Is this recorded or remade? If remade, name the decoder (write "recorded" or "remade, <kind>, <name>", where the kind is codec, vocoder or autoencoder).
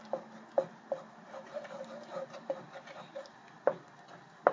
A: recorded